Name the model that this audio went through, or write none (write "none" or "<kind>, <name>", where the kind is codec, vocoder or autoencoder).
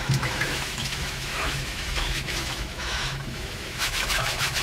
autoencoder, DAC-VAE